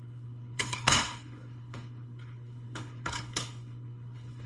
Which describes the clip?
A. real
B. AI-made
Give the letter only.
B